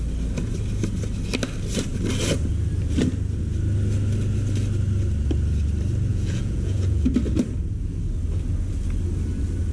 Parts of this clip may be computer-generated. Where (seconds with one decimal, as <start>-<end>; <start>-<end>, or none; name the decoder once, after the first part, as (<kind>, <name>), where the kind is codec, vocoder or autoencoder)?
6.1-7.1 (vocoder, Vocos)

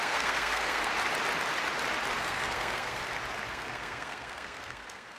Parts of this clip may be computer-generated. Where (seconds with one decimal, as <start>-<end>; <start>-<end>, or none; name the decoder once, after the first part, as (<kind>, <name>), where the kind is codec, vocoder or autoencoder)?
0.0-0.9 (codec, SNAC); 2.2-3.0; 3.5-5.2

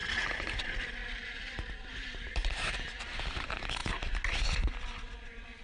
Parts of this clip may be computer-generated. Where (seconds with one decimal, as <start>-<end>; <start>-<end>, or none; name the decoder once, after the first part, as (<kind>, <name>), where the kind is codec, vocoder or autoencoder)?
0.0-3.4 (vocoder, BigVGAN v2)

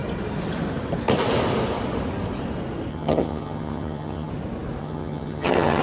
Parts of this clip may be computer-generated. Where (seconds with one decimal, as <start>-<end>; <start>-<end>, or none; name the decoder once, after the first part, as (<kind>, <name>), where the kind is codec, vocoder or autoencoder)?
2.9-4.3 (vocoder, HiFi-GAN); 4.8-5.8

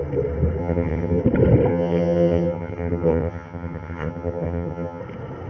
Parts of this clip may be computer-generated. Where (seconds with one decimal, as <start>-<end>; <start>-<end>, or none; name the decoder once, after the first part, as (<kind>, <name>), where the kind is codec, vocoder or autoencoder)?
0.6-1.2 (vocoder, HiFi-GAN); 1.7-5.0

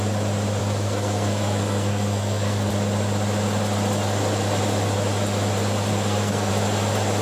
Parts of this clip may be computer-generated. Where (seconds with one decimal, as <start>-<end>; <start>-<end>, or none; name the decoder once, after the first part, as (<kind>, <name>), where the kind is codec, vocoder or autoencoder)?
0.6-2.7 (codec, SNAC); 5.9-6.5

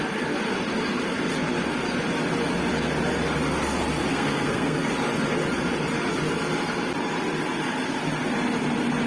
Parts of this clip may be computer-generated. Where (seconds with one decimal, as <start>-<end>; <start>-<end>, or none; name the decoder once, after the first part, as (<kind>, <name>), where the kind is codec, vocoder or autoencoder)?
4.1-4.9 (codec, SNAC)